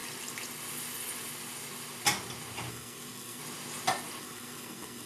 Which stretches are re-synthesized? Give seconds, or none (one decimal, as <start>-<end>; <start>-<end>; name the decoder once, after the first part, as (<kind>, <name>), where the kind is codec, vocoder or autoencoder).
2.7-3.4 (codec, SNAC); 4.2-5.1